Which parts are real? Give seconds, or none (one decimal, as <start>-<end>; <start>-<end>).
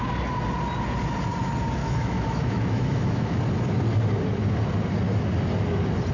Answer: 0.0-1.8; 3.4-6.1